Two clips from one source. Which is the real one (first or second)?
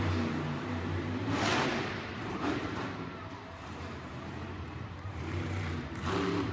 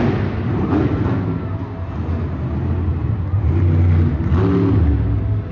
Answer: second